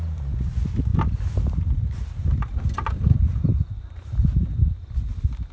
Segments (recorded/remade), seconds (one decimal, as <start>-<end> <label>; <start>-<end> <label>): 0.0-5.5 remade